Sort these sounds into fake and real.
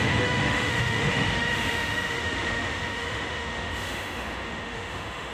fake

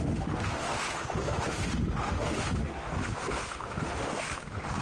fake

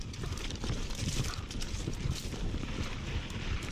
fake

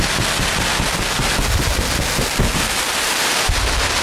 real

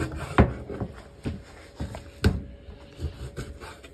real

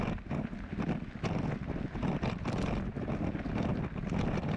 real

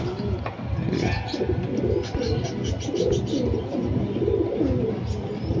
real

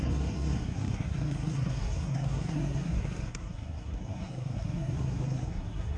fake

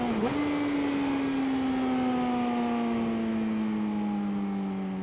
real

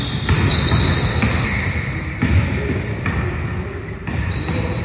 real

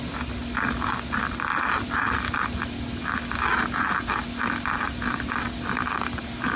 real